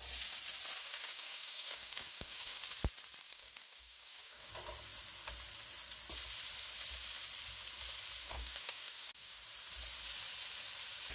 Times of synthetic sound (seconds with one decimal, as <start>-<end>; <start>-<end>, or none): 0.8-2.6; 3.2-4.5; 8.2-9.4